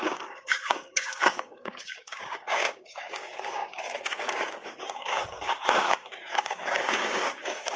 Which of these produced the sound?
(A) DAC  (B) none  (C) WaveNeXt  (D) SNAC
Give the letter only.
A